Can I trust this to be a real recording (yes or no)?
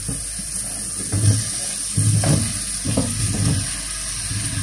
yes